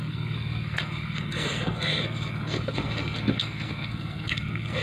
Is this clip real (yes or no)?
no